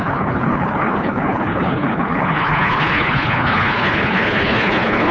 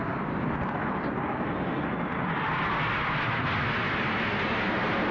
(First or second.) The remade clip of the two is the first